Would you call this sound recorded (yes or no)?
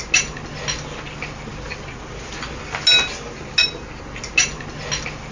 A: yes